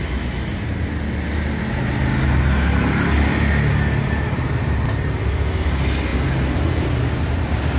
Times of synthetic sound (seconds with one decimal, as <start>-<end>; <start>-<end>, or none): none